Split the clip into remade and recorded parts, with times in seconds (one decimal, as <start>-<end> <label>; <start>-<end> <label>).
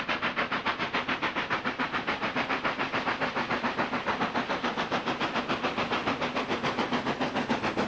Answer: 0.0-7.9 recorded